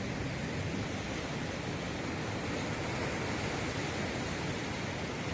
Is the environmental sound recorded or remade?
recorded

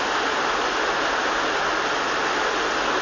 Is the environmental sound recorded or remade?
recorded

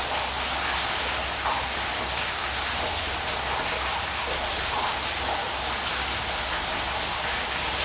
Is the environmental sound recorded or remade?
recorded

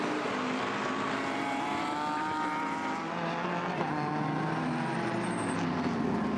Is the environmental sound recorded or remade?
recorded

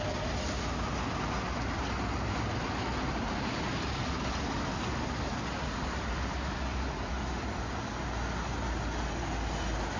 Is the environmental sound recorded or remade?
recorded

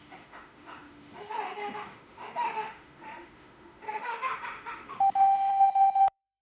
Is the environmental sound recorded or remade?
remade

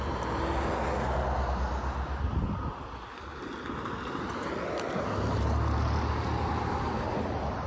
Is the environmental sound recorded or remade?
recorded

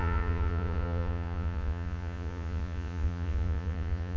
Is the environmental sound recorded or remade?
remade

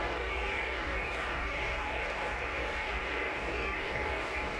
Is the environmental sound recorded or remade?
remade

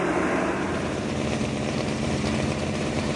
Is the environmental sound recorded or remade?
remade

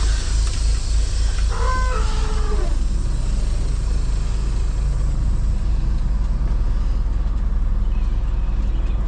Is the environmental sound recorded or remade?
recorded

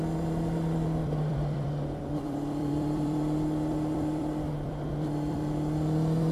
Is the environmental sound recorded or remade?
remade